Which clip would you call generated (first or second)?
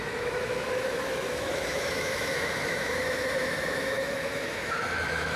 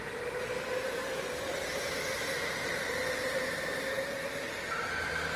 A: first